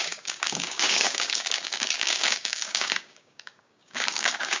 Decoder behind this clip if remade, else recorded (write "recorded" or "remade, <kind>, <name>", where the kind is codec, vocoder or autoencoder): remade, codec, DAC